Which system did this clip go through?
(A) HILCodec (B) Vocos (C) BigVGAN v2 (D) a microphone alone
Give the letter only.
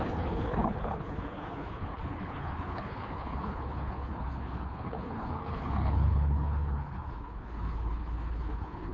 A